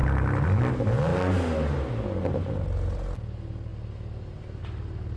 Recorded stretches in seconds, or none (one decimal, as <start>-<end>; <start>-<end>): 0.0-5.2